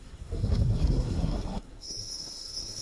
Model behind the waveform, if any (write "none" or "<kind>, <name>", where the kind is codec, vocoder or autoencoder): codec, SNAC